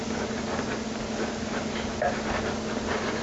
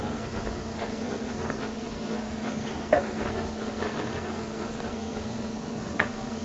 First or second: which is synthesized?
second